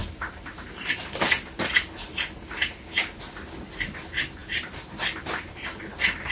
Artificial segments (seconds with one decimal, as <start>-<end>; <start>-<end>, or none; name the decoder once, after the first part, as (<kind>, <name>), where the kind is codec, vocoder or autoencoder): 0.0-1.0 (vocoder, BigVGAN v2)